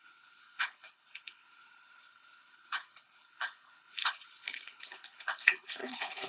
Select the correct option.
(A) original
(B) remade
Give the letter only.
B